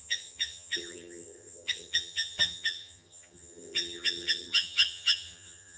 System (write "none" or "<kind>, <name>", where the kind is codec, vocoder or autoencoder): vocoder, HiFi-GAN